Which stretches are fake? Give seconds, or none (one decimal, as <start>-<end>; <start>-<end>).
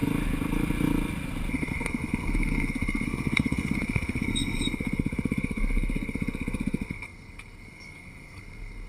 1.5-8.9